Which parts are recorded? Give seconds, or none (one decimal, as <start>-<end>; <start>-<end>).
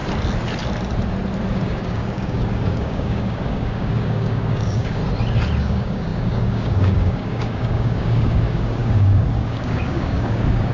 0.0-1.5; 5.0-5.6